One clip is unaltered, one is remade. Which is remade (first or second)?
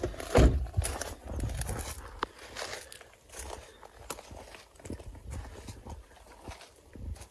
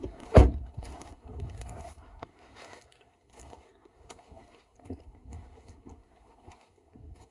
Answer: second